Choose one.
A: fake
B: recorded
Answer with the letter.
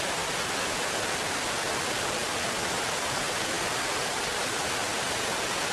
B